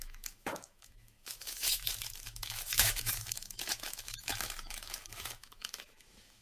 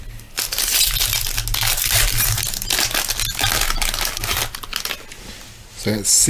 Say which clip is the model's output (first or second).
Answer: first